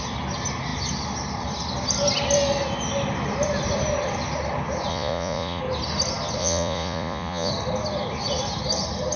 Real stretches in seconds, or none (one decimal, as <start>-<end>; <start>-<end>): 0.0-4.9; 5.6-6.4; 7.5-9.2